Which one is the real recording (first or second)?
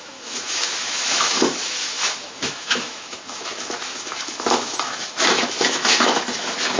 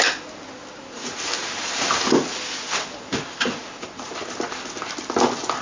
second